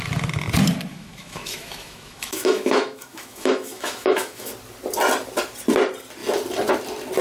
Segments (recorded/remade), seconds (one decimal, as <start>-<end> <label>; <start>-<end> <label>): 0.0-0.9 recorded; 0.9-4.5 remade; 4.5-7.2 recorded